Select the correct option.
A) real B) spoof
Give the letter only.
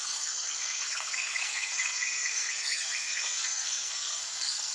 B